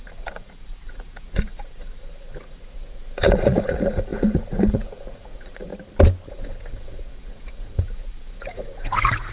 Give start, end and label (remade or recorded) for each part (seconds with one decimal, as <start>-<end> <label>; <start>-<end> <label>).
0.0-5.7 remade; 5.7-6.3 recorded; 6.3-9.3 remade

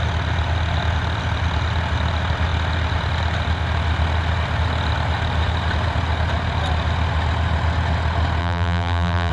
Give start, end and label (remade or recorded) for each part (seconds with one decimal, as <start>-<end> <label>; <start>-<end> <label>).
0.0-8.4 recorded; 8.4-9.3 remade

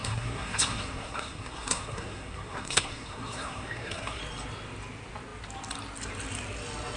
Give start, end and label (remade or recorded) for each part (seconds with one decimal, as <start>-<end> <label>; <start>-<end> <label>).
0.0-4.2 remade; 4.2-7.0 recorded

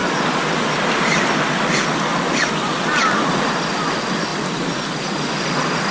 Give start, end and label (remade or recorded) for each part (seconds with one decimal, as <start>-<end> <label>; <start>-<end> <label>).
0.0-5.9 recorded

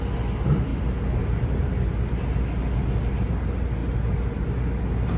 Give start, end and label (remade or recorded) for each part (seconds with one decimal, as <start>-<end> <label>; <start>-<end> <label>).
0.0-5.2 recorded

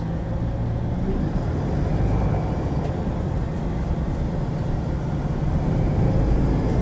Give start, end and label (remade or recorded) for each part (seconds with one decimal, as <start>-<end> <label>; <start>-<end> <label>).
0.0-1.9 recorded; 1.9-6.0 remade; 6.0-6.8 recorded